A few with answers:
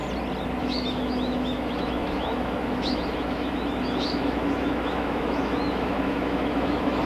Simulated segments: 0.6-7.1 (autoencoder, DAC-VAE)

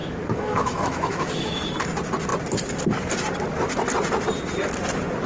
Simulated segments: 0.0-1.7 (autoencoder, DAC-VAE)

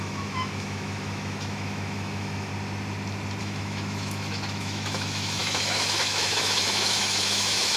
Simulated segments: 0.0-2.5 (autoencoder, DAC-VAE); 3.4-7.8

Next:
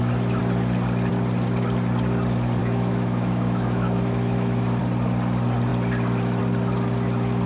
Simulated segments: 2.6-4.8 (autoencoder, DAC-VAE)